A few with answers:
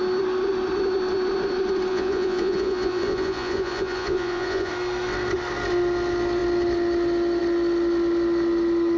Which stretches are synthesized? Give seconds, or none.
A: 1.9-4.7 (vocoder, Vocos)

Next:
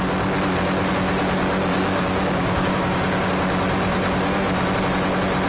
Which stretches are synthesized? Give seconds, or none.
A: 1.7-3.3 (codec, DAC)

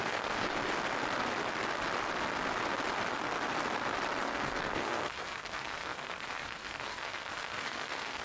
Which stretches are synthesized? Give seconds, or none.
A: 0.0-0.5 (codec, SNAC); 4.2-8.2

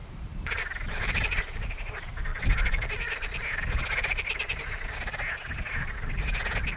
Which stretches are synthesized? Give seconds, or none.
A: 0.0-2.3 (vocoder, BigVGAN v2)